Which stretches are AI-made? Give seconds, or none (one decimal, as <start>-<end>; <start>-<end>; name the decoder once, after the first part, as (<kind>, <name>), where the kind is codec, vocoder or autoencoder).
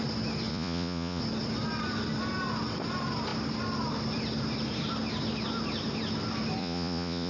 0.5-1.2 (vocoder, Vocos); 6.6-7.3